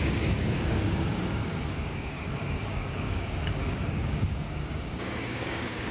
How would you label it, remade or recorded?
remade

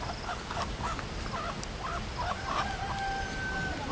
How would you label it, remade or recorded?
recorded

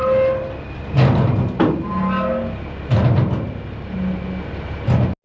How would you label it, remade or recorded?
recorded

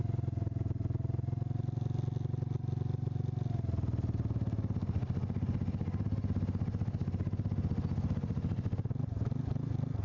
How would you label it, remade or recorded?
recorded